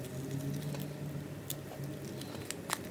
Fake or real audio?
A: real